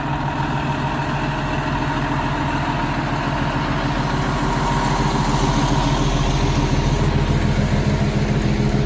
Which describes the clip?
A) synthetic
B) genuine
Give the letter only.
B